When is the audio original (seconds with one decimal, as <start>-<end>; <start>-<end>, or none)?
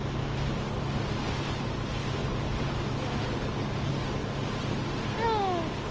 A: 0.0-5.9